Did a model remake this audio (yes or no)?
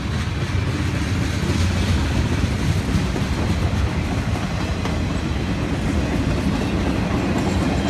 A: no